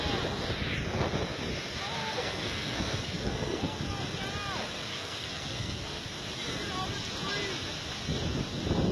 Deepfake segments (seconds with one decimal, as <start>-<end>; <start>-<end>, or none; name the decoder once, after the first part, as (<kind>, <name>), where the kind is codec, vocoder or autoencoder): 2.0-3.8 (codec, SNAC); 4.9-6.0